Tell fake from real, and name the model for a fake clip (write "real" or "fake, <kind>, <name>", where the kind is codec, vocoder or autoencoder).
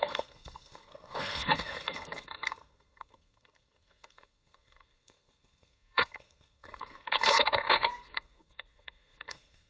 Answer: fake, codec, SNAC